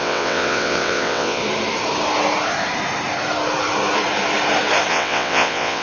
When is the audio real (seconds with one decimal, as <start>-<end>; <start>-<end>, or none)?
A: 1.4-4.9